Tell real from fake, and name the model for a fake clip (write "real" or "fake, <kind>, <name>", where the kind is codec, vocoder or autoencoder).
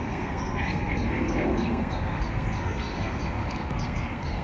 fake, codec, SNAC